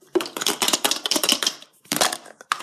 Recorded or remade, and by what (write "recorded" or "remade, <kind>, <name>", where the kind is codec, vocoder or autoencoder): remade, vocoder, BigVGAN v2